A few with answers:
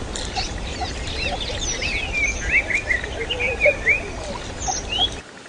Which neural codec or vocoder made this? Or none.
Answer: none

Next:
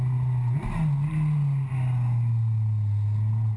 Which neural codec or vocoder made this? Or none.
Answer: none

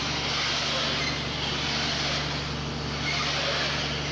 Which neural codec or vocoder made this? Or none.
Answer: none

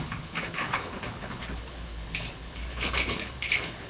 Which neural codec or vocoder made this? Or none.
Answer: codec, HILCodec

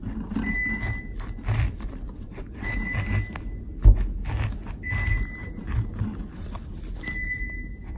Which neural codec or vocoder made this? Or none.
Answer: none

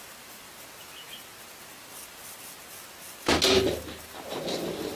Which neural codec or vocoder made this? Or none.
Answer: none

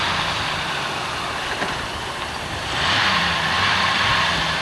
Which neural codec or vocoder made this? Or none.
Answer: vocoder, BigVGAN v2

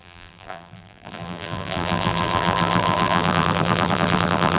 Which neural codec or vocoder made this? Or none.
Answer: vocoder, BigVGAN v2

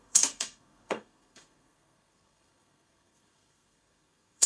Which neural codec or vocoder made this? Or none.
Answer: codec, SNAC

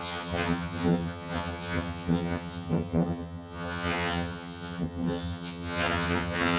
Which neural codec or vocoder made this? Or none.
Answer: vocoder, HiFi-GAN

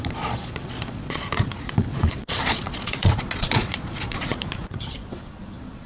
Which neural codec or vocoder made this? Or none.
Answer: vocoder, Vocos